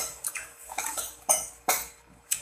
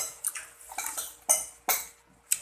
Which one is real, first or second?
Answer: second